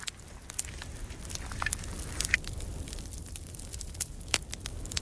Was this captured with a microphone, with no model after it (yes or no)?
yes